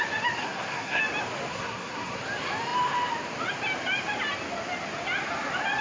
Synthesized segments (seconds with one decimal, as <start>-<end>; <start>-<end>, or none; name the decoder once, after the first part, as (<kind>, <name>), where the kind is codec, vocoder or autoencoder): 0.4-1.0 (codec, SNAC); 1.5-2.2